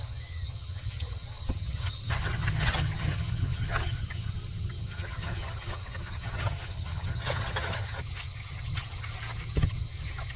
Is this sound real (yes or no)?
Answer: no